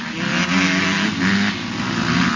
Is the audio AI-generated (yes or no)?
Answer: no